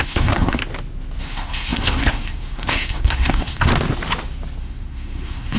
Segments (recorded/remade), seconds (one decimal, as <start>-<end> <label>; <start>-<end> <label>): 0.0-0.6 remade; 0.6-1.2 recorded; 1.2-3.7 remade; 3.7-4.6 recorded; 4.6-5.6 remade